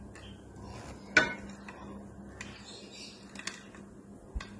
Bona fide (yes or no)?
yes